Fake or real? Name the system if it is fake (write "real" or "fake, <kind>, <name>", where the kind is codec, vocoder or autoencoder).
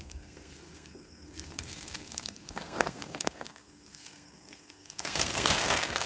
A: fake, codec, SNAC